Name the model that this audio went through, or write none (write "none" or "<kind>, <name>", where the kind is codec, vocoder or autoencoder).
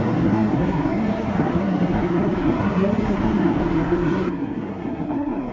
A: codec, SNAC